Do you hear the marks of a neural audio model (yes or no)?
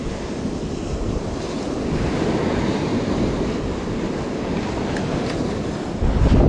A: no